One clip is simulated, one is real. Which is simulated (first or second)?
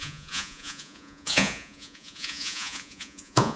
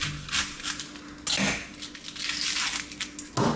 first